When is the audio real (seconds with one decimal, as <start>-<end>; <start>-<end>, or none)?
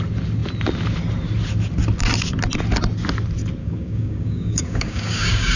0.0-3.6